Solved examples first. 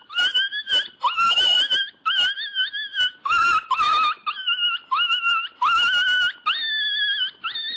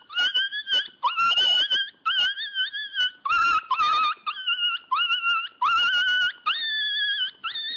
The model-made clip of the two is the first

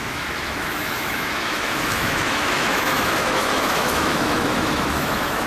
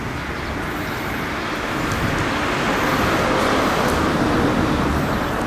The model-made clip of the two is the first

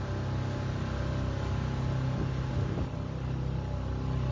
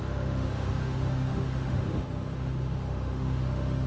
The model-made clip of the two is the second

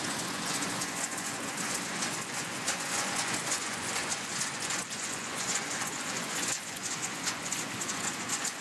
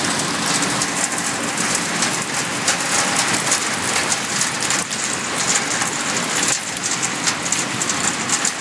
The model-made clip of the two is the first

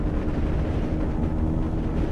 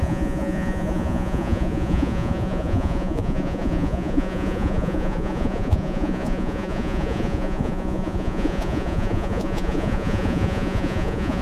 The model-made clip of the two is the second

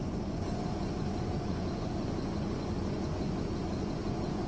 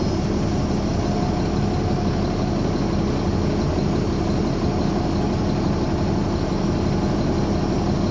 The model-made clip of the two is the first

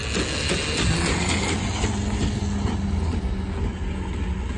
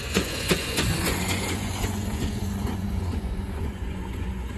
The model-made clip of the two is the second